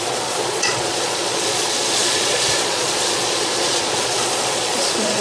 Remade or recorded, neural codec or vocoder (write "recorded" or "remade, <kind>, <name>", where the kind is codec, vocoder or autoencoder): remade, vocoder, Vocos